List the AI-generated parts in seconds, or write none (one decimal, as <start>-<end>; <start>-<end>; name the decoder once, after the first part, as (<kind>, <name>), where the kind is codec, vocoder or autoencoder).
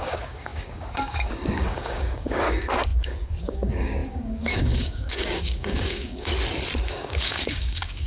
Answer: 0.0-6.3 (codec, DAC); 6.9-8.1